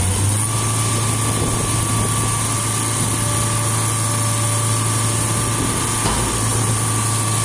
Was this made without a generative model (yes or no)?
yes